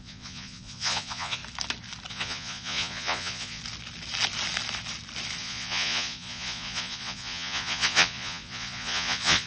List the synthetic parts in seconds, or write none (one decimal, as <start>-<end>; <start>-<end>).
0.0-1.4; 2.1-3.6; 5.4-9.5